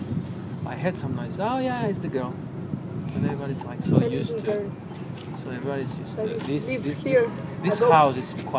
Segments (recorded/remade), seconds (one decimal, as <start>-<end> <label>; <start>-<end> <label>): 0.0-0.4 recorded; 0.4-2.7 remade; 2.7-4.2 recorded; 4.2-4.9 remade; 4.9-6.1 recorded; 6.1-7.9 remade; 7.9-8.6 recorded